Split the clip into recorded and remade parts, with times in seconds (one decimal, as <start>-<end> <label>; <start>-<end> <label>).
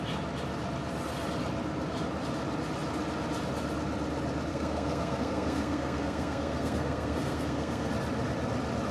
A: 0.0-4.5 recorded; 4.5-7.9 remade; 7.9-8.9 recorded